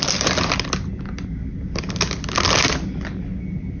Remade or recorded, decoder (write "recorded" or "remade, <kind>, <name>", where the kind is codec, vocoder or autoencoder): recorded